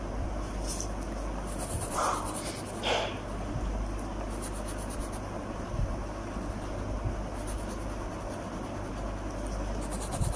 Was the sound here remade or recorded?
recorded